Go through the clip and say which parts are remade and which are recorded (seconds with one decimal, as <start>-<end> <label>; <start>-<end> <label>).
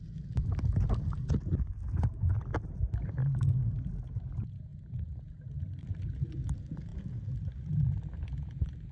0.0-8.9 recorded